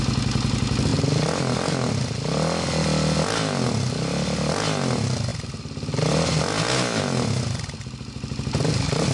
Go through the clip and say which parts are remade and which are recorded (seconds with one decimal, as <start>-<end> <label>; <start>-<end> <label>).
0.0-9.1 recorded